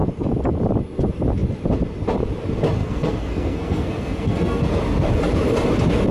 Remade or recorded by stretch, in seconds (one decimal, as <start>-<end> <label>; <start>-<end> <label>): 0.0-2.8 recorded; 2.8-4.8 remade; 4.8-6.1 recorded